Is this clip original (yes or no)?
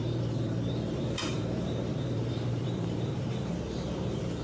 no